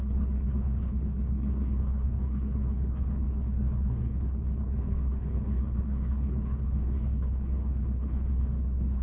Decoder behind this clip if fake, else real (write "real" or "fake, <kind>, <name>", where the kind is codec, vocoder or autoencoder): fake, codec, HILCodec